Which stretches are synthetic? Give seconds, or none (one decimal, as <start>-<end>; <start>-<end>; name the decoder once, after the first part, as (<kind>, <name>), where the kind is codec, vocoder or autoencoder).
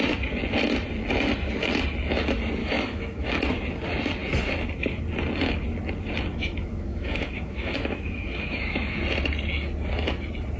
2.6-3.4 (autoencoder, DAC-VAE); 6.3-9.0